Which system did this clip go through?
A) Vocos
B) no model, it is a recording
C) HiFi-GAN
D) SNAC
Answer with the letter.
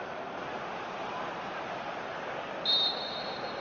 B